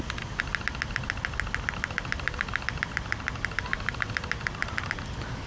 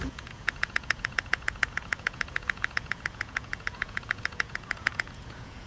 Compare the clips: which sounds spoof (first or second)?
second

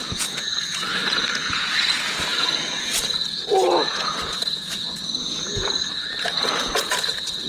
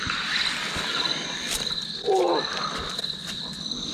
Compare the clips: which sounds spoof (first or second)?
first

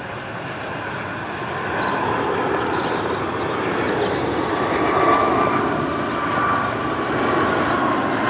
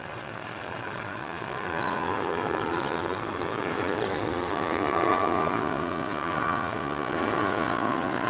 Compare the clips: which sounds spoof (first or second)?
second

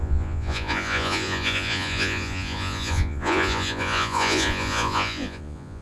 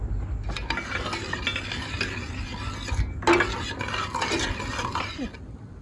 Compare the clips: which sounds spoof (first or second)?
first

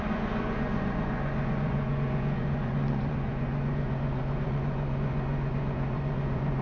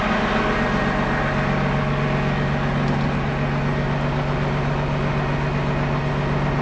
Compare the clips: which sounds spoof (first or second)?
first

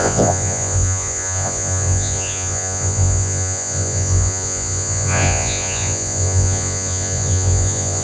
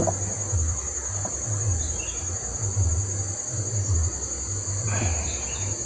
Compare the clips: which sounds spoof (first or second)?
first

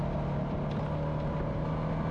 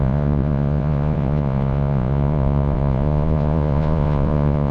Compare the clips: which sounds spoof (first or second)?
second